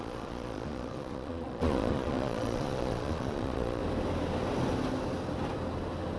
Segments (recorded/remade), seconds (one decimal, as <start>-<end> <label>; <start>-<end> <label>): 0.0-3.8 remade; 3.8-6.2 recorded